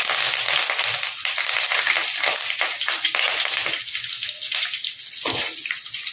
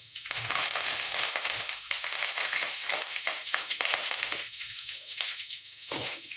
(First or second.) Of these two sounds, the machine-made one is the second